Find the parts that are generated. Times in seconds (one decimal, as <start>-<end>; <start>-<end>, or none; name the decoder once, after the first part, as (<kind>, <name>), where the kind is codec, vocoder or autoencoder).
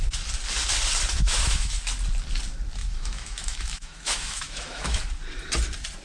1.2-1.8 (autoencoder, DAC-VAE); 2.8-5.0